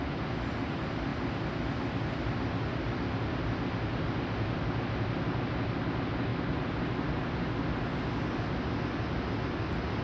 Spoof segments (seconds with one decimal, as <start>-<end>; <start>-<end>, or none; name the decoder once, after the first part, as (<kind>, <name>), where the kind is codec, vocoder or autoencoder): none